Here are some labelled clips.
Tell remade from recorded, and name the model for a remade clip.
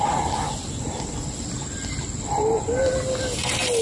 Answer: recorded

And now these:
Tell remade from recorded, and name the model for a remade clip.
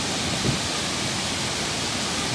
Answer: recorded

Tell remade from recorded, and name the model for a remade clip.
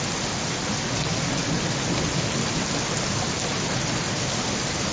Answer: recorded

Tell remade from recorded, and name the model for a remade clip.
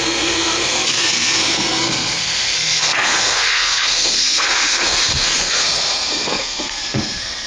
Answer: remade, codec, SNAC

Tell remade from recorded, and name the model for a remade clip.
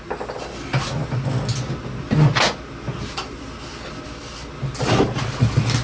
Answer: recorded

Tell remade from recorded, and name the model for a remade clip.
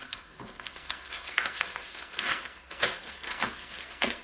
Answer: remade, codec, SNAC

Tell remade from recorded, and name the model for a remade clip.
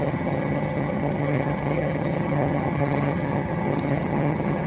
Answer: remade, vocoder, HiFi-GAN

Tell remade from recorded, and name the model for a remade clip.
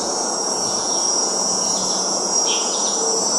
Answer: remade, vocoder, Vocos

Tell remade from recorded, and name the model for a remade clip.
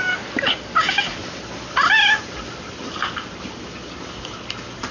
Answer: recorded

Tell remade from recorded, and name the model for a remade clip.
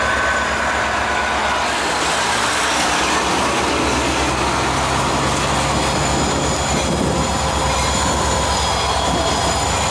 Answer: recorded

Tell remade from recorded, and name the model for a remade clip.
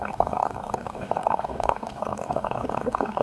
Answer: remade, codec, DAC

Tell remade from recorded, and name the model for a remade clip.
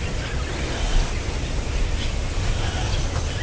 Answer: recorded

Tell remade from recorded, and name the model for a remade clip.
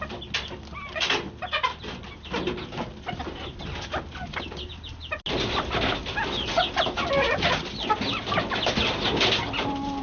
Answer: recorded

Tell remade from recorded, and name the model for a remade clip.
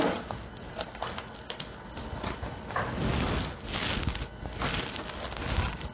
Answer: recorded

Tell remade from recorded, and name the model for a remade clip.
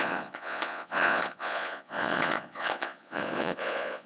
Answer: remade, vocoder, Vocos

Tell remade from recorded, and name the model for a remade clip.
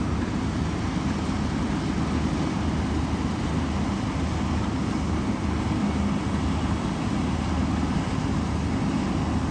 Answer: recorded